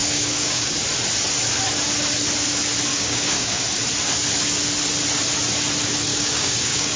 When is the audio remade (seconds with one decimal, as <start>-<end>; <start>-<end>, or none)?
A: 0.0-0.7; 2.9-3.6; 6.1-7.0